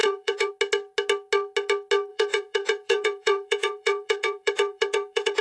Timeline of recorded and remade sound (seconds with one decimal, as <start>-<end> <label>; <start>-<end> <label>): 0.0-0.5 remade; 0.5-2.1 recorded; 2.1-5.4 remade